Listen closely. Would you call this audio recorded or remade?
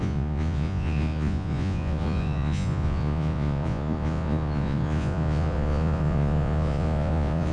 remade